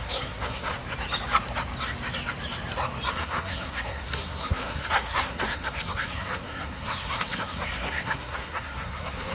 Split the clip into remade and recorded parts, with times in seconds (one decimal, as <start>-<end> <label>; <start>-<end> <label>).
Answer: 0.0-0.7 remade; 0.7-3.1 recorded; 3.1-9.3 remade